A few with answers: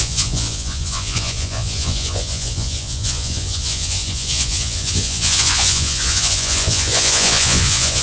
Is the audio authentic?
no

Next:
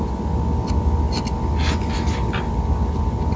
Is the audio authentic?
yes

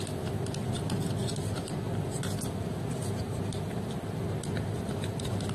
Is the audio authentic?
yes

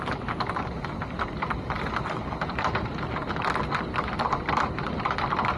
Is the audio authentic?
no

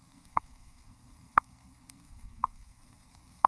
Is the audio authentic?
no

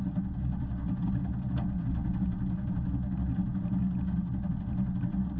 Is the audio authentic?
yes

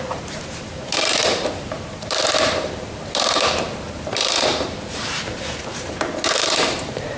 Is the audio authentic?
no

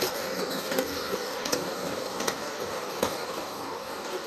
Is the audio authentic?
no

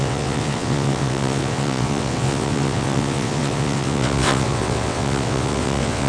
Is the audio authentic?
no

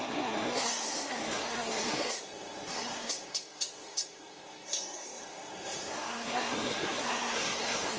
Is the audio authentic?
no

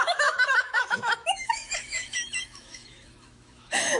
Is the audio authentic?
no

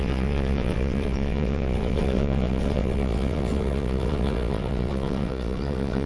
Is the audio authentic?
no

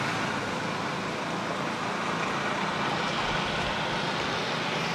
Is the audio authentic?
yes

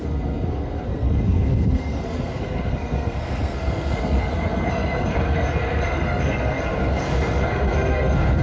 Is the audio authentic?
no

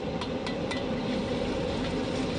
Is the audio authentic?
yes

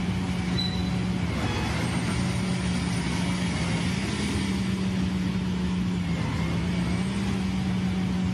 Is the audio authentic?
yes